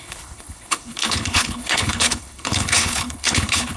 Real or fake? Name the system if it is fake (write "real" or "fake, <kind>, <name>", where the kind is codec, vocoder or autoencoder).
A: fake, codec, HILCodec